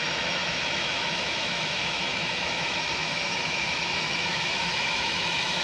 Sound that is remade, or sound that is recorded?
remade